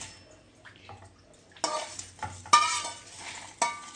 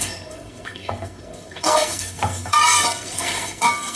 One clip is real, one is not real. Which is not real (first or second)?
second